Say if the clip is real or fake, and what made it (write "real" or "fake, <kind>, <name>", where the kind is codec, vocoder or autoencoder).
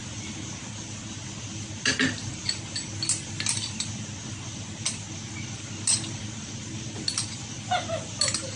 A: real